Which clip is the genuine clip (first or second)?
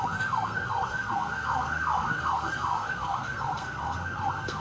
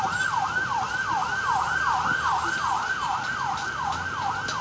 second